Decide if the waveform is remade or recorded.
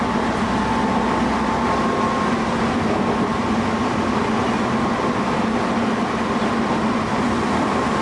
recorded